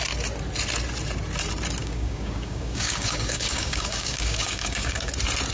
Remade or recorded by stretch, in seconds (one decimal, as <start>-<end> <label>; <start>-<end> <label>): 0.0-1.8 recorded; 1.8-5.1 remade; 5.1-5.5 recorded